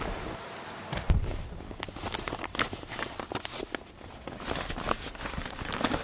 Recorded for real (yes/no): yes